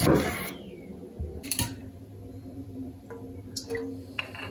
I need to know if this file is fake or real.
fake